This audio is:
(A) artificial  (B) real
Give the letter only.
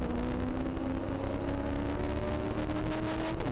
B